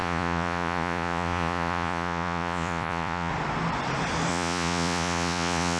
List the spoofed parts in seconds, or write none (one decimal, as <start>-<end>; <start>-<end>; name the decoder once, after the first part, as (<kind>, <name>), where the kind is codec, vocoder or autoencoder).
0.0-3.3 (vocoder, Vocos); 4.3-5.8